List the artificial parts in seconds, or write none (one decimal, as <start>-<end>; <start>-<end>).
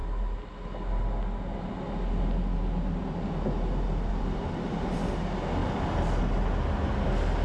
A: none